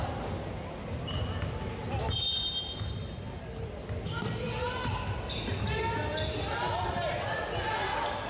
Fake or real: real